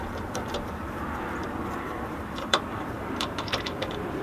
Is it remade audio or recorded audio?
remade